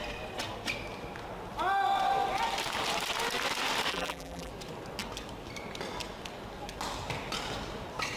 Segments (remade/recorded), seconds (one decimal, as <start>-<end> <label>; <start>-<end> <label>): 0.0-3.9 recorded; 3.9-4.5 remade; 4.5-8.2 recorded